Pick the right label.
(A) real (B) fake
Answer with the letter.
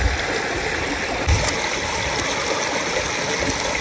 A